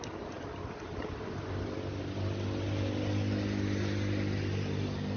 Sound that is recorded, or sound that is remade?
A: recorded